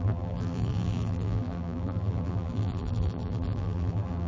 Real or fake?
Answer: fake